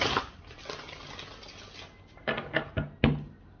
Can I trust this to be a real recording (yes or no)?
yes